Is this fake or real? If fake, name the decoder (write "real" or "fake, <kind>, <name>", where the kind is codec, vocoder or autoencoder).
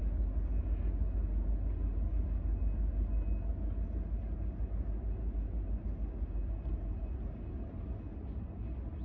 real